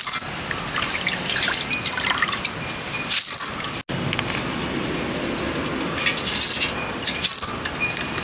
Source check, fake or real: real